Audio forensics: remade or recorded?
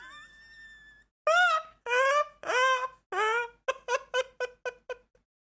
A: recorded